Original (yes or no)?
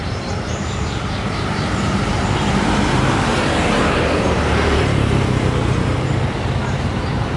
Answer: no